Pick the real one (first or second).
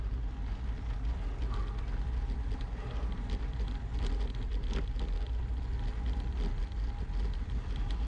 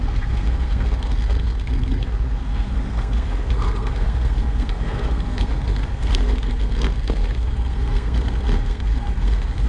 first